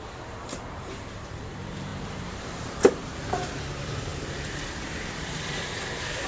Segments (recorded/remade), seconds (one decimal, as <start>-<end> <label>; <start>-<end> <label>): 0.0-2.8 remade; 2.8-3.3 recorded; 3.3-6.3 remade

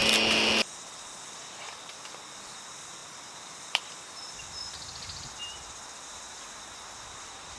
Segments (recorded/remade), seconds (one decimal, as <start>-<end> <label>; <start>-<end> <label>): 0.0-3.0 recorded; 3.0-5.3 remade; 5.3-7.6 recorded

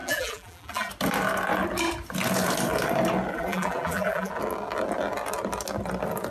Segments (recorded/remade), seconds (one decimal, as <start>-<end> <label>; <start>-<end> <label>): 0.0-0.9 remade; 0.9-3.3 recorded; 3.3-4.3 remade; 4.3-6.3 recorded

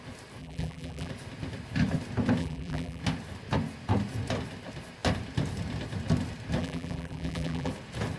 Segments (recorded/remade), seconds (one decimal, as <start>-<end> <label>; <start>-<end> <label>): 0.0-0.4 recorded; 0.4-1.1 remade; 1.1-2.4 recorded; 2.4-3.0 remade; 3.0-6.6 recorded; 6.6-7.7 remade; 7.7-8.2 recorded